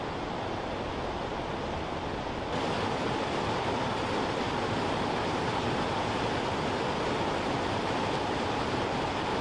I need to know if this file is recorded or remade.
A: recorded